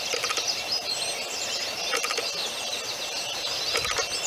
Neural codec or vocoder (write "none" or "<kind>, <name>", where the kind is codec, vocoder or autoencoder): none